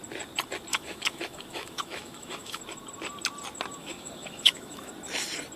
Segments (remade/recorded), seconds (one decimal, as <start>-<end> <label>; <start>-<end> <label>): 0.0-0.7 recorded; 0.7-2.6 remade; 2.6-3.8 recorded; 3.8-4.9 remade; 4.9-5.6 recorded